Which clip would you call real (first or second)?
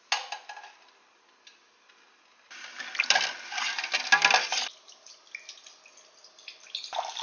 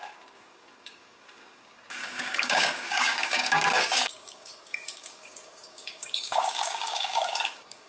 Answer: first